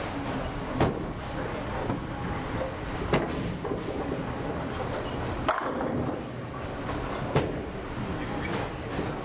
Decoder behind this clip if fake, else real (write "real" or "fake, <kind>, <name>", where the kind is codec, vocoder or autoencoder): real